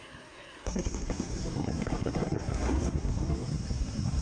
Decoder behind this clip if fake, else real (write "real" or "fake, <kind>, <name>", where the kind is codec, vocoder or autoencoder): fake, codec, SNAC